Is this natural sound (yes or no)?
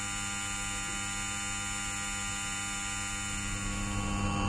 yes